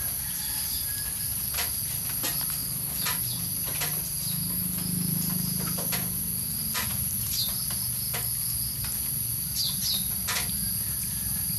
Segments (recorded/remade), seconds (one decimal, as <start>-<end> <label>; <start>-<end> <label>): 0.0-11.6 recorded